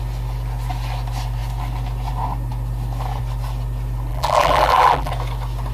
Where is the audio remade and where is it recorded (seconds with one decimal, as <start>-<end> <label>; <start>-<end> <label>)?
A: 0.0-4.1 recorded; 4.1-5.1 remade; 5.1-5.7 recorded